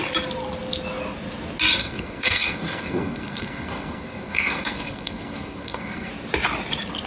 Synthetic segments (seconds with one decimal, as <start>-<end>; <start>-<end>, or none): 1.8-6.1